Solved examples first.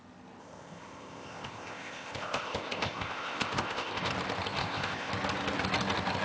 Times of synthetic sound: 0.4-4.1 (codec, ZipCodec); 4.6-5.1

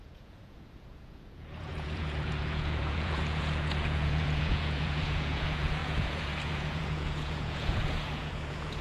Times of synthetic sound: 0.0-8.8 (vocoder, Vocos)

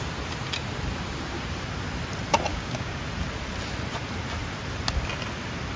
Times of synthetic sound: 2.5-3.0 (codec, DAC)

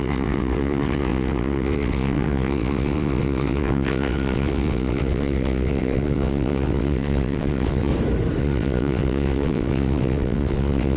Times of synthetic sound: 0.0-7.9 (vocoder, WaveNeXt); 8.4-11.0

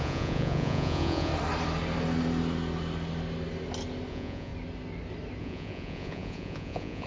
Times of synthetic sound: 0.0-1.3 (vocoder, Vocos); 4.1-4.5; 5.4-7.1